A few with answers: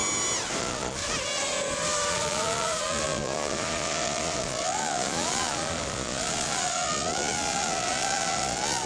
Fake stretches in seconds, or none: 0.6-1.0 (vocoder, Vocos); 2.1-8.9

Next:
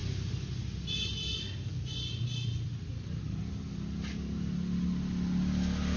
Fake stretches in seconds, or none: none

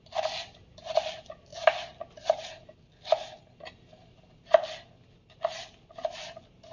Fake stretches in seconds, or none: none

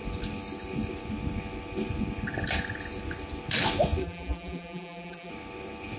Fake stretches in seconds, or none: 4.0-5.3 (vocoder, BigVGAN v2)

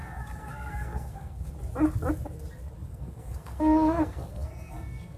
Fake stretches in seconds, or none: 0.0-1.5 (codec, SNAC); 2.9-5.2

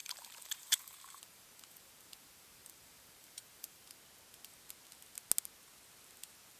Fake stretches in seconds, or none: 0.0-4.0 (vocoder, BigVGAN v2)